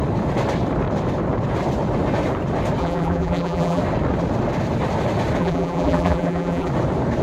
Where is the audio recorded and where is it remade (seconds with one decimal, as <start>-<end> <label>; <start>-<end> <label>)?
0.0-2.8 recorded; 2.8-3.8 remade; 3.8-5.4 recorded; 5.4-6.7 remade; 6.7-7.2 recorded